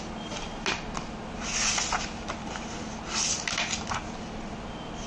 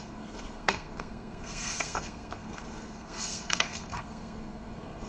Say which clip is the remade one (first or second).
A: second